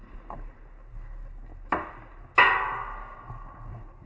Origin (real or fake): real